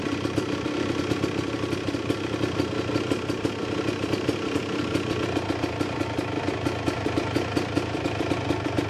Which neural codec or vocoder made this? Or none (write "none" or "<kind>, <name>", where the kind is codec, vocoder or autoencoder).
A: vocoder, BigVGAN v2